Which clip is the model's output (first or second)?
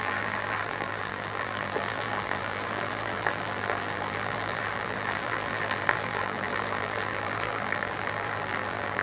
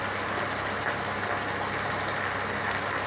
first